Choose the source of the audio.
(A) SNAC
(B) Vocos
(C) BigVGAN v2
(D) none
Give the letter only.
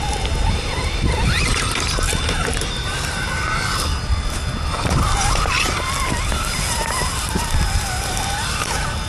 D